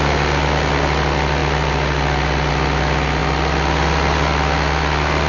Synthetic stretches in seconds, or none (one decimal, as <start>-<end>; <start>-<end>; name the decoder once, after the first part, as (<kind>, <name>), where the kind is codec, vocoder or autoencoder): none